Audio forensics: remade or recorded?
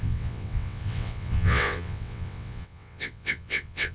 remade